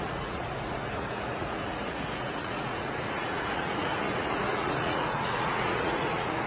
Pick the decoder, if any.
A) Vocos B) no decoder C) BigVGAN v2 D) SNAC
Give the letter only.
A